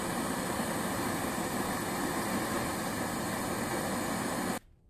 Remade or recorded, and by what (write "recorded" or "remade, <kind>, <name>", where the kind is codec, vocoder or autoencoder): recorded